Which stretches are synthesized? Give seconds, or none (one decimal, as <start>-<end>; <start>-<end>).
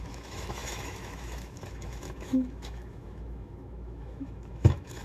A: 0.0-5.0